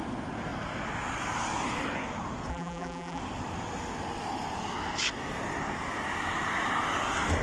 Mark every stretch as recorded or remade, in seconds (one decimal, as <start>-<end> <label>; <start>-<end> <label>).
0.0-2.5 recorded; 2.5-3.2 remade; 3.2-7.4 recorded

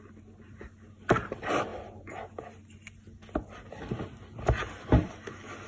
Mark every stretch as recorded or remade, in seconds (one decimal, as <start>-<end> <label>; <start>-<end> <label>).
0.0-5.7 recorded

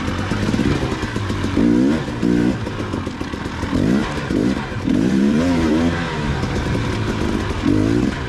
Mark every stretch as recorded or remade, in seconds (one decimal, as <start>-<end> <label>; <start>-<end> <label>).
0.0-4.0 recorded; 4.0-5.7 remade; 5.7-8.3 recorded

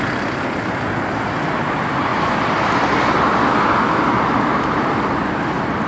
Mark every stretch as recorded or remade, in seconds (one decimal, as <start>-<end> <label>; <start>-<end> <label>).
0.0-5.9 recorded

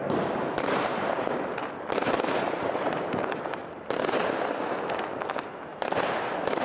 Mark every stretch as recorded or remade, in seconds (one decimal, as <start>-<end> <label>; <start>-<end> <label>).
0.0-4.0 remade; 4.0-5.7 recorded; 5.7-6.6 remade

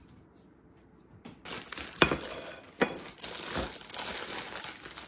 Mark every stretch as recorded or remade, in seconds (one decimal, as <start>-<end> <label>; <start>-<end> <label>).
0.0-5.1 recorded